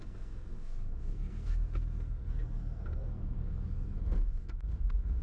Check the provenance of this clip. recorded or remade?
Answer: remade